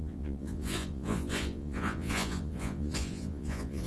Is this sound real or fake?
fake